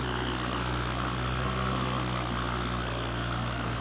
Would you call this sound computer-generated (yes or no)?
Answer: yes